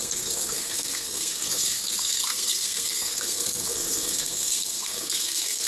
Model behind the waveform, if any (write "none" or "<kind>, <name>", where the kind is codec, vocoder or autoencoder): codec, SNAC